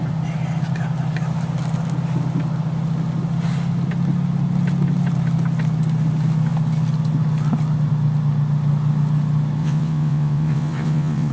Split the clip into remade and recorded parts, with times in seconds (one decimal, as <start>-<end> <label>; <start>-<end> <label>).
0.0-9.6 recorded; 9.6-11.3 remade